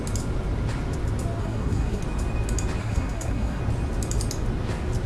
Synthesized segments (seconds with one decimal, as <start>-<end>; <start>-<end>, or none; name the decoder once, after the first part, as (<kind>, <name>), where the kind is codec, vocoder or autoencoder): 1.4-2.0 (codec, SNAC); 2.8-3.6